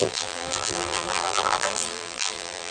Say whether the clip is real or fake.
fake